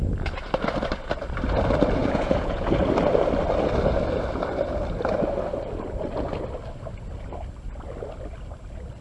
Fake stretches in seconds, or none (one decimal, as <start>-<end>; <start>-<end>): 2.0-2.8